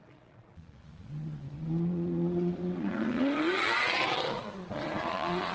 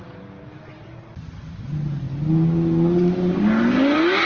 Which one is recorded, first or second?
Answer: second